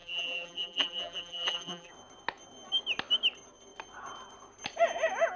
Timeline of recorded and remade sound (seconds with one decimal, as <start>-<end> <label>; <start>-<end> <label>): 0.0-1.9 remade; 1.9-5.4 recorded